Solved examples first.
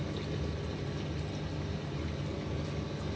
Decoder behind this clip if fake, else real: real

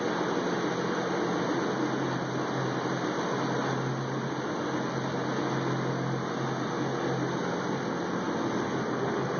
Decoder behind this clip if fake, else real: real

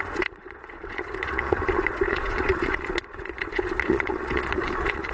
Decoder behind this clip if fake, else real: fake, vocoder, Vocos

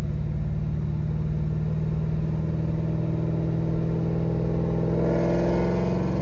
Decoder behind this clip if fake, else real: real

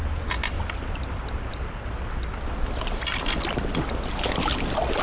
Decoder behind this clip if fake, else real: real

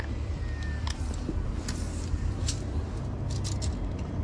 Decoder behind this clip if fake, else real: real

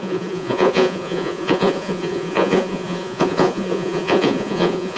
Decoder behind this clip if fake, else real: fake, vocoder, Vocos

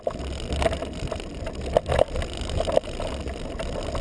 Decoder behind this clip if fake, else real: real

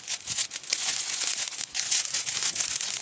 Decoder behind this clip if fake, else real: fake, vocoder, Vocos